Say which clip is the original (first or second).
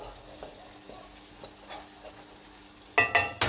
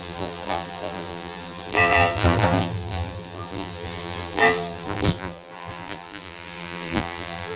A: first